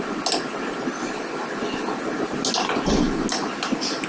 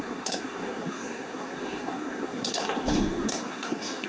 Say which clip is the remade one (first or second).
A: second